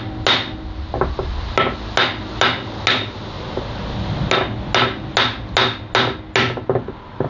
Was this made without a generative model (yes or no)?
yes